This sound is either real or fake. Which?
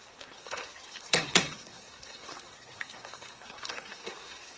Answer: fake